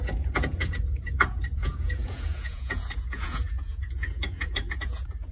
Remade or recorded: remade